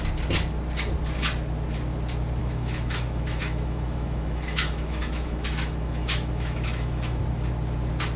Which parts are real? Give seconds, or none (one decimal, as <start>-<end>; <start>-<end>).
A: 0.0-2.4; 7.2-8.2

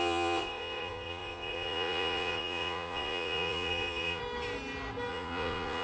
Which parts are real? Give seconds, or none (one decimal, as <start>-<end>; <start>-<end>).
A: 4.2-5.1

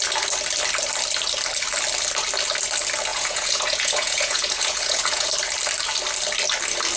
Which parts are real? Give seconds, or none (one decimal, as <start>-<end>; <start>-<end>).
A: 0.0-3.1; 5.3-7.0

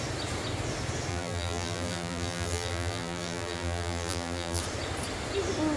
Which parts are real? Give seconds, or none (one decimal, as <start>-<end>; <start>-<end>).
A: 0.0-1.1; 4.6-5.8